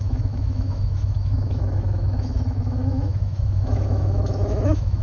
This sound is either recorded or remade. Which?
remade